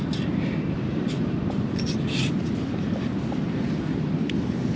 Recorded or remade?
remade